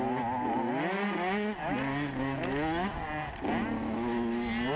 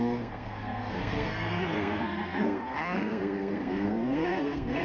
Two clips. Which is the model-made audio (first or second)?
second